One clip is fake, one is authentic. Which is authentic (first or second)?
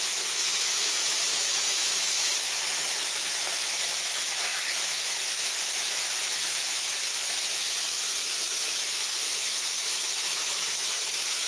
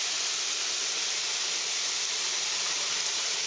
second